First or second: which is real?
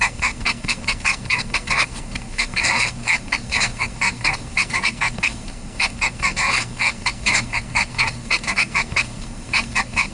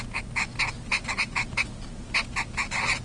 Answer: second